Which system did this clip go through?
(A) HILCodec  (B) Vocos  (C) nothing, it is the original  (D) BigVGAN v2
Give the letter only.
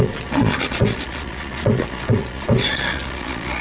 B